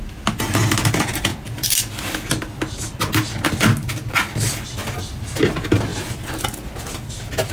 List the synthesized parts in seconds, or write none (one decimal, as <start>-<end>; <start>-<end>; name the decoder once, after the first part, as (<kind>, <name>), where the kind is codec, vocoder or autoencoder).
5.9-7.5 (vocoder, BigVGAN v2)